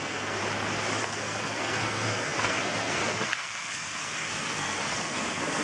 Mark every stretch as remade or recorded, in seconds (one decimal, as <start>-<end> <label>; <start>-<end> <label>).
0.0-0.4 remade; 0.4-1.0 recorded; 1.0-5.6 remade

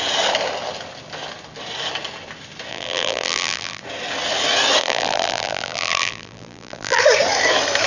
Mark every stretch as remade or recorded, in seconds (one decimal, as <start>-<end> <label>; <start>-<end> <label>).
0.0-2.7 recorded; 2.7-3.8 remade; 3.8-4.8 recorded; 4.8-7.0 remade; 7.0-7.9 recorded

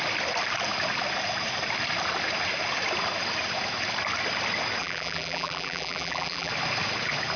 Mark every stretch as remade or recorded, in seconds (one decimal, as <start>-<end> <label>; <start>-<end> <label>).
0.0-4.8 recorded; 4.8-6.5 remade; 6.5-7.4 recorded

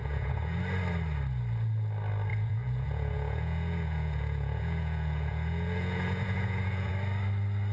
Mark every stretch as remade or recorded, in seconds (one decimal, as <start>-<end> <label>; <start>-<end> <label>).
0.0-0.6 remade; 0.6-2.3 recorded; 2.3-6.9 remade; 6.9-7.7 recorded

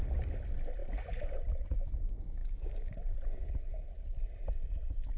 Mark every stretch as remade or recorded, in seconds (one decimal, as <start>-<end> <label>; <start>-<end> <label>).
0.0-2.4 recorded; 2.4-3.0 remade; 3.0-5.2 recorded

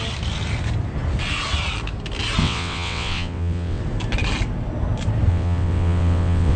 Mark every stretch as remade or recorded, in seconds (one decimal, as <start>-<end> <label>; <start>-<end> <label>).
0.0-2.4 recorded; 2.4-3.8 remade; 3.8-5.3 recorded; 5.3-6.6 remade